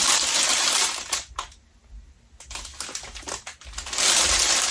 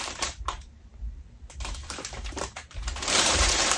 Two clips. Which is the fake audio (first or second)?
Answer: second